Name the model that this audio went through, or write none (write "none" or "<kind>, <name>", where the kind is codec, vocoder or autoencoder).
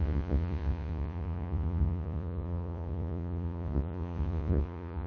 vocoder, Vocos